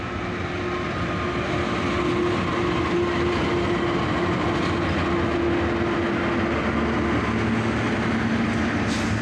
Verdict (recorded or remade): recorded